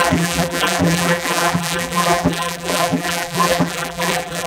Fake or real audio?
fake